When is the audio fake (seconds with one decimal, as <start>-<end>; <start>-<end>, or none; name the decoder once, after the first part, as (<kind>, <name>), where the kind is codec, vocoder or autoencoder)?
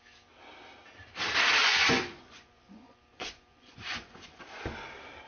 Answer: 1.6-4.4 (vocoder, Vocos)